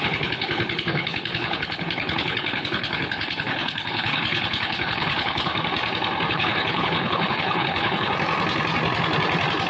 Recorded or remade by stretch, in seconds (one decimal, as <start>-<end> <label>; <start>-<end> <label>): 0.0-5.5 remade; 5.5-6.3 recorded; 6.3-8.1 remade; 8.1-9.7 recorded